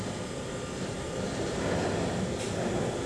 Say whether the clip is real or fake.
real